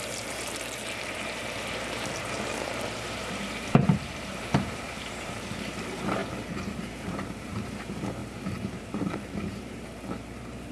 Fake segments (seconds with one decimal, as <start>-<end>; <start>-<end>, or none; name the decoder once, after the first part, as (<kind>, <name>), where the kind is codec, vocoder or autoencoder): 0.0-6.2 (vocoder, BigVGAN v2); 6.7-10.7